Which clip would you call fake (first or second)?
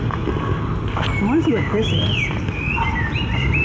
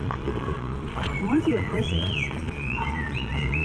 second